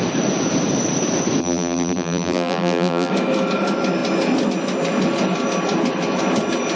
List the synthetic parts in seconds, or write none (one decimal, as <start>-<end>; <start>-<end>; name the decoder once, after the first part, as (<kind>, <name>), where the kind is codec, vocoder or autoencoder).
1.4-3.1 (vocoder, BigVGAN v2)